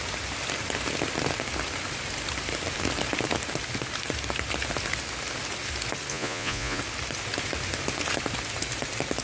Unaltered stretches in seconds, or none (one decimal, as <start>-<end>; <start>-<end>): 0.0-6.1; 6.8-9.2